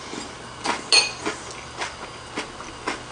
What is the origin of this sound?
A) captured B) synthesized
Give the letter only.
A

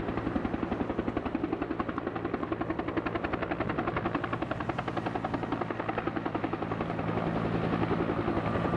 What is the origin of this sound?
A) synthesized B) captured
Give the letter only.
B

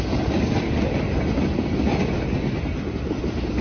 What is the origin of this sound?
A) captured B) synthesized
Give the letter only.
A